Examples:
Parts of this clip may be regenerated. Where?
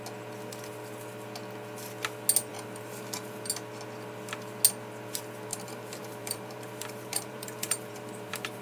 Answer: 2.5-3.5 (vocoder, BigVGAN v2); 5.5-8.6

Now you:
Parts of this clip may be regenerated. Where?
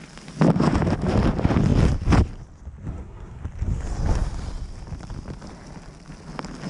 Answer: 2.9-3.4 (codec, SNAC)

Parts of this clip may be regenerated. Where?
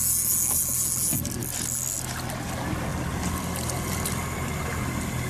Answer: none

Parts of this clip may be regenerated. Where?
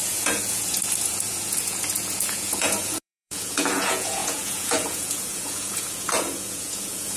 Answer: 0.0-7.2 (vocoder, Vocos)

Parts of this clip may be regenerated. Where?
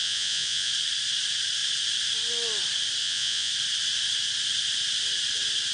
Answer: 0.0-0.7 (vocoder, Vocos); 3.0-3.5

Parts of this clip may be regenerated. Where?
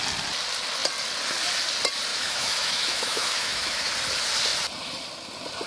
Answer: 2.1-3.9 (autoencoder, DAC-VAE)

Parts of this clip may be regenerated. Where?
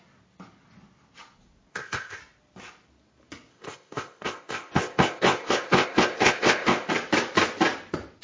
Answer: 1.7-2.2 (codec, ZipCodec); 3.5-6.9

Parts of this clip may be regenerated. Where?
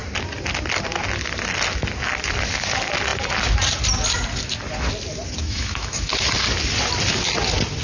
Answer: 5.4-6.1 (autoencoder, DAC-VAE)